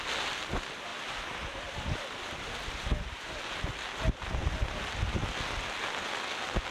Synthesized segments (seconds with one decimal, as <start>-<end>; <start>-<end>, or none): none